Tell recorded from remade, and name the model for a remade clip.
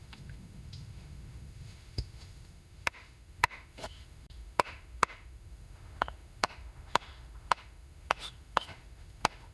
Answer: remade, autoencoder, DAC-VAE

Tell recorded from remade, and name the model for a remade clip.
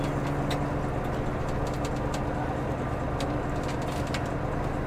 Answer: recorded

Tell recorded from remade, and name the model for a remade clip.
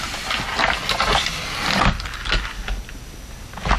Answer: recorded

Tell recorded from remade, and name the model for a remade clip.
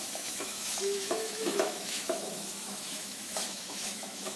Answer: remade, autoencoder, DAC-VAE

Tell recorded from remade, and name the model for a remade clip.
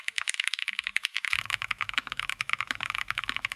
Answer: remade, autoencoder, DAC-VAE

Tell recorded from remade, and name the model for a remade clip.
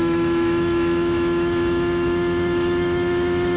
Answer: remade, autoencoder, DAC-VAE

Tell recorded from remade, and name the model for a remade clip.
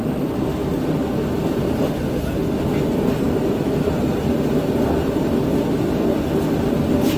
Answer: recorded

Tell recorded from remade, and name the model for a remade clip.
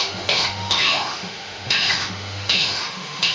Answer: remade, autoencoder, DAC-VAE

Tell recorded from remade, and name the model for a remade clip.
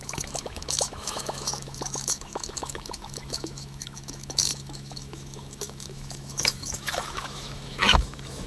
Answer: remade, autoencoder, DAC-VAE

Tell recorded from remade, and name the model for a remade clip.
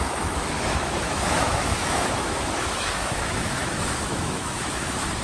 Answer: remade, autoencoder, DAC-VAE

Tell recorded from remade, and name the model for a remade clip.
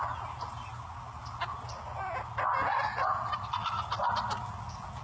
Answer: recorded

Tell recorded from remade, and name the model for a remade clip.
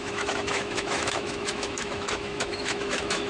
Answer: remade, autoencoder, DAC-VAE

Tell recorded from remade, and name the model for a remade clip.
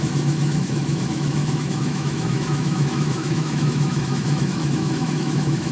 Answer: remade, autoencoder, DAC-VAE